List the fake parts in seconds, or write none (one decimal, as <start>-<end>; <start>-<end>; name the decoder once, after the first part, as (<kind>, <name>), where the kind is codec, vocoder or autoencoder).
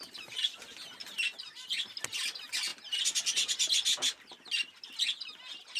none